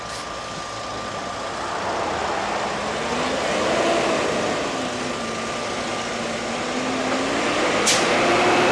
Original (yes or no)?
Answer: yes